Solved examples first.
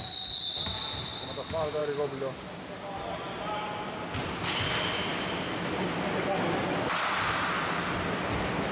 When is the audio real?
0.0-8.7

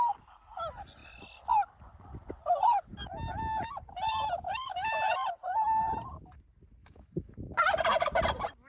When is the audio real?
0.0-6.8; 7.3-8.7

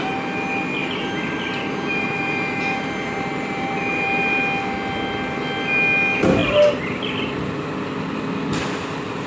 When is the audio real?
0.0-0.8; 4.4-6.4; 7.4-9.3

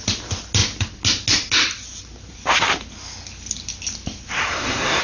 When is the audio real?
0.0-4.4

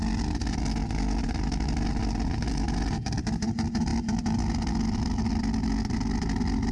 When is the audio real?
0.0-6.7

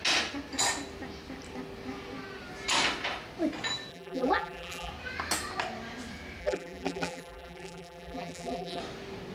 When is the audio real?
0.0-3.9; 4.9-6.4; 8.8-9.3

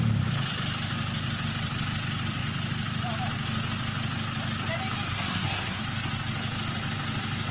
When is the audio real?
0.0-5.1; 5.8-7.5